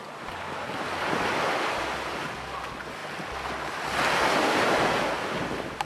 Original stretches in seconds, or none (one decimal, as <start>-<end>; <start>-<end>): 0.0-5.9